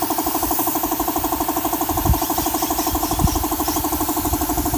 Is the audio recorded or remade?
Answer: recorded